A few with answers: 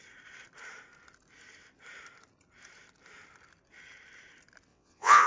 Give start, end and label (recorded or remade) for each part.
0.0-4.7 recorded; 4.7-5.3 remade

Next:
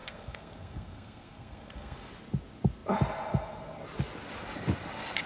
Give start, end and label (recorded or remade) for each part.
0.0-2.1 remade; 2.1-5.3 recorded

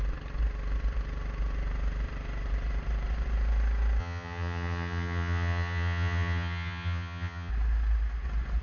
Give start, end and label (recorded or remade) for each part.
0.0-4.0 recorded; 4.0-7.5 remade; 7.5-8.6 recorded

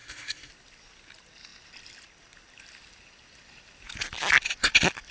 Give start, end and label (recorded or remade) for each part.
0.0-0.5 remade; 0.5-5.1 recorded